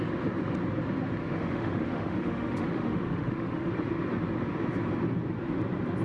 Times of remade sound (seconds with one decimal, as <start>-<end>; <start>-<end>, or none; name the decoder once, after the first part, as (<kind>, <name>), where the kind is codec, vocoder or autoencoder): 1.2-3.7 (autoencoder, DAC-VAE)